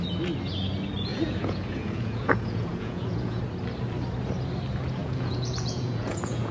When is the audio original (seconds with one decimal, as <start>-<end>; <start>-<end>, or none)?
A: 0.0-1.1; 3.4-5.0